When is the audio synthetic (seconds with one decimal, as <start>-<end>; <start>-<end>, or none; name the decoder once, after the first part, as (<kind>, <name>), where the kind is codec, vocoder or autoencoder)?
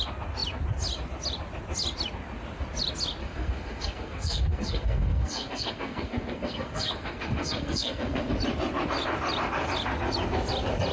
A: 3.2-8.3 (codec, SNAC)